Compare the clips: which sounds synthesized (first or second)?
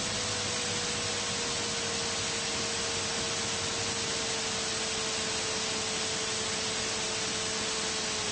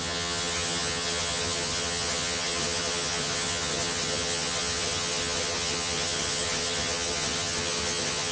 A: second